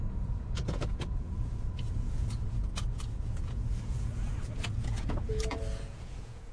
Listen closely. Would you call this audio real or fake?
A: fake